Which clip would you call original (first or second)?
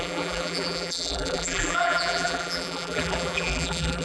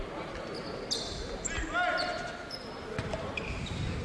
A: second